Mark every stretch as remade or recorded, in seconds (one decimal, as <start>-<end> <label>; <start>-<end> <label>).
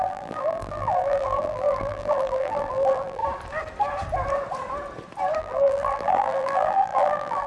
0.0-3.2 remade; 3.2-5.4 recorded; 5.4-7.5 remade